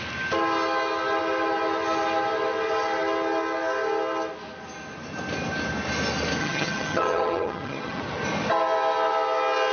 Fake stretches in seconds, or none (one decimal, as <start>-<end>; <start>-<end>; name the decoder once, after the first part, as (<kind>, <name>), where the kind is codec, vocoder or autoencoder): 6.4-8.0 (vocoder, HiFi-GAN)